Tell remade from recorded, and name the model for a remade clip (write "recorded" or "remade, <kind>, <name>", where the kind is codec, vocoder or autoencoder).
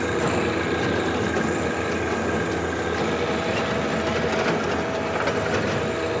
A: recorded